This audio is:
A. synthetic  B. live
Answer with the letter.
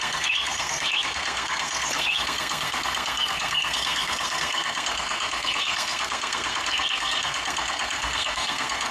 A